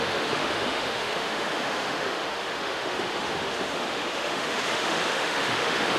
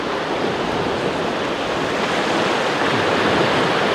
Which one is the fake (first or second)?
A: first